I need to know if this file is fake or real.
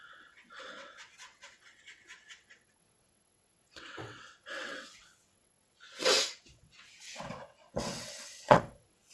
fake